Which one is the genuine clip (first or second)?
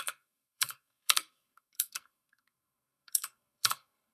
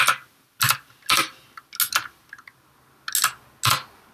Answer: second